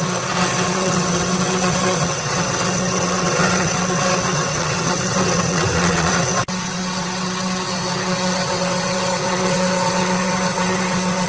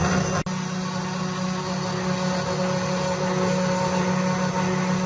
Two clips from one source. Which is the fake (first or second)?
first